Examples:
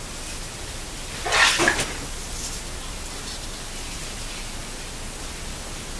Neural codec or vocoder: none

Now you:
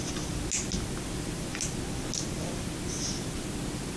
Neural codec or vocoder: none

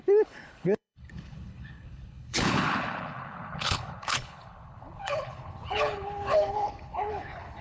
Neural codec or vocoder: codec, HILCodec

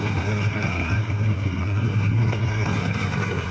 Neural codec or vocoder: codec, SNAC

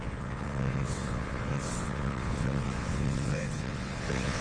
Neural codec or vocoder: vocoder, WaveNeXt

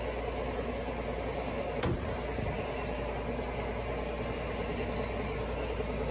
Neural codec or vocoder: none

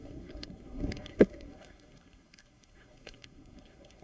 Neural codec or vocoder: codec, SNAC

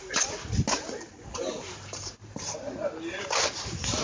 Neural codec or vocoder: none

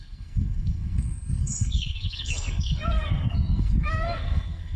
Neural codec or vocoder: codec, SNAC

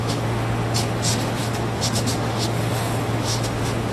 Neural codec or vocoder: autoencoder, DAC-VAE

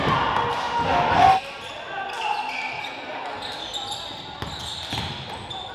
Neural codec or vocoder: none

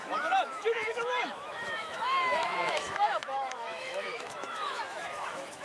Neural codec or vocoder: autoencoder, DAC-VAE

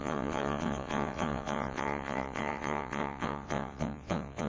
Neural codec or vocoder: vocoder, WaveNeXt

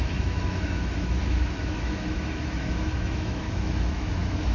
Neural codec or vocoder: autoencoder, DAC-VAE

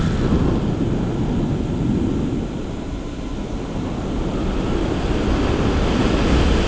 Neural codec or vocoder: none